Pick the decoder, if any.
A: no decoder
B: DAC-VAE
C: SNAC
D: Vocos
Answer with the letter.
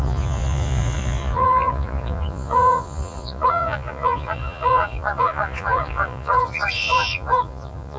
D